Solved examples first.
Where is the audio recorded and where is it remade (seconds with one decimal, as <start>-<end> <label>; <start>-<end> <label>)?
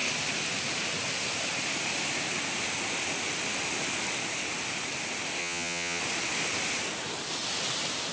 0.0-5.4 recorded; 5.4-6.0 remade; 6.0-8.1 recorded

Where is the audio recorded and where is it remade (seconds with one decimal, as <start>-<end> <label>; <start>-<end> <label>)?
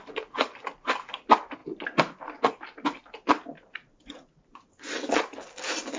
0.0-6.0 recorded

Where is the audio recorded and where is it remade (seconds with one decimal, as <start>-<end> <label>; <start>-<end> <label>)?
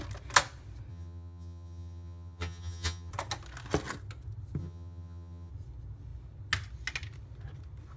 0.0-0.9 recorded; 0.9-3.1 remade; 3.1-4.6 recorded; 4.6-5.5 remade; 5.5-8.0 recorded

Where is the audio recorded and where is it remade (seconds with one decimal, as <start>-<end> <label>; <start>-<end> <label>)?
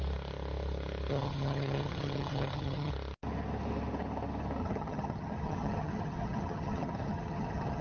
0.0-1.1 recorded; 1.1-2.9 remade; 2.9-4.6 recorded; 4.6-7.8 remade